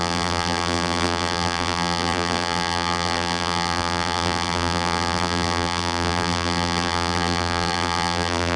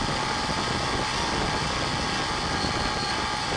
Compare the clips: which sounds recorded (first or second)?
second